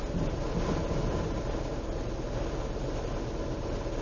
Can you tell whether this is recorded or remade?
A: recorded